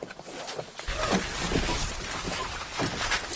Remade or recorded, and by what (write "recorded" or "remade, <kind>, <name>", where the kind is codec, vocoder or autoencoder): recorded